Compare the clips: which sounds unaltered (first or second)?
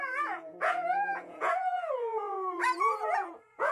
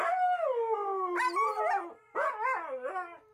second